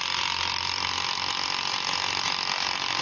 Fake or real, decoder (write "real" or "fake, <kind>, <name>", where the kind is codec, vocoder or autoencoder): real